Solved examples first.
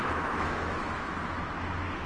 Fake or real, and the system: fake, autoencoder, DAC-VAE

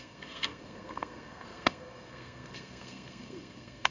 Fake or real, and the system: fake, codec, SNAC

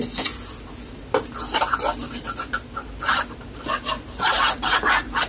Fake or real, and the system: real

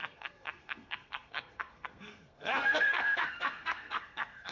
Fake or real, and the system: fake, codec, SNAC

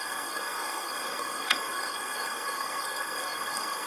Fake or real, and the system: fake, codec, SNAC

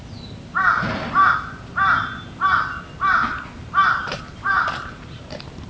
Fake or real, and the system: real